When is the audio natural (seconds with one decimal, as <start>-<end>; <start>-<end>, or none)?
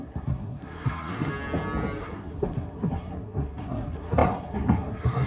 1.3-2.0